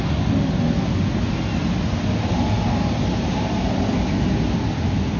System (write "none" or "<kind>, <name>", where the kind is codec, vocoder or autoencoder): none